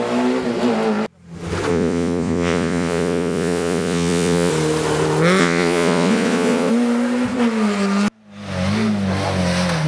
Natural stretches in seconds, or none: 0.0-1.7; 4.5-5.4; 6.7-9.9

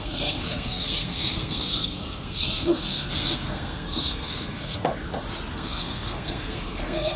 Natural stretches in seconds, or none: 4.9-5.5